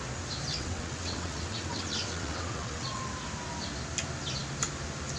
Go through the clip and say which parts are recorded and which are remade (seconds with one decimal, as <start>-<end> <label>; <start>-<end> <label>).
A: 0.0-0.5 recorded; 0.5-3.0 remade; 3.0-5.2 recorded